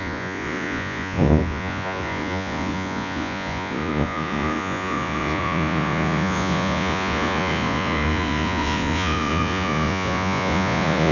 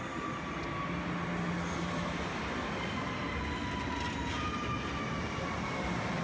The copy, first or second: first